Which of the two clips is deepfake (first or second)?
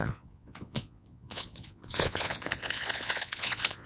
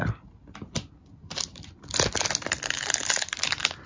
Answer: first